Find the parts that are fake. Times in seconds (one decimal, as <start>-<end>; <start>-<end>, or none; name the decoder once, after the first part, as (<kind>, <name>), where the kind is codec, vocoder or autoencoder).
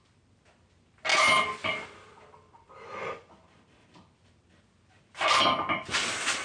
none